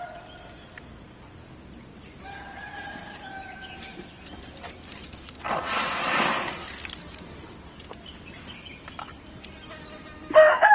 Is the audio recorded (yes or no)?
yes